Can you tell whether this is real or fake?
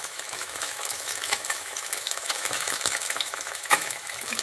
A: fake